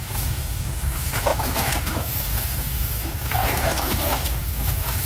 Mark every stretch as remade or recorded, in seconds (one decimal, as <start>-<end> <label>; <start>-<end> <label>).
0.0-5.1 remade